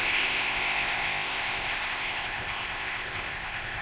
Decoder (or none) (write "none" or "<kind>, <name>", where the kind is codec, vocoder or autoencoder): codec, ZipCodec